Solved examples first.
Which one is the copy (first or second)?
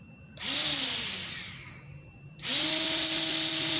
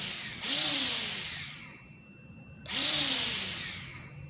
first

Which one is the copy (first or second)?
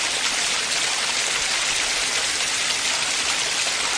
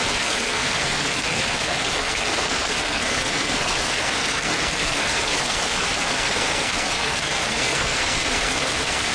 second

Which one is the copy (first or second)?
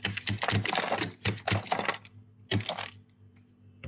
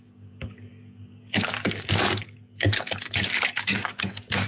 second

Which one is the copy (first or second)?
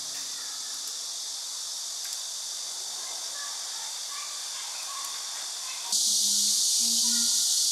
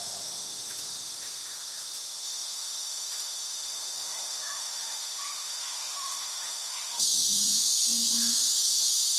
second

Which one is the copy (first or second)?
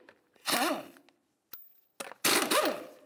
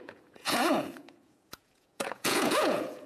second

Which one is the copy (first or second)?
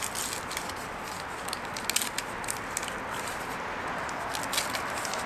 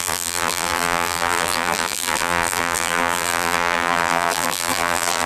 second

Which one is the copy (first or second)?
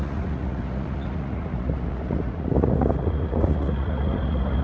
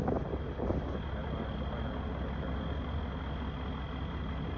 first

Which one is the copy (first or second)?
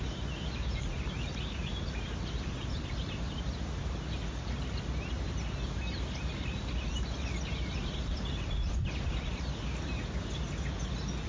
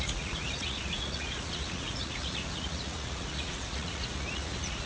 second